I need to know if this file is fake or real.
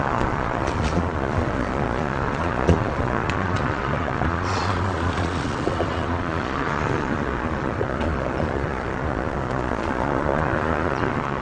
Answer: fake